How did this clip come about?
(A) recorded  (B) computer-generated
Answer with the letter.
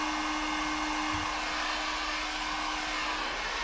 A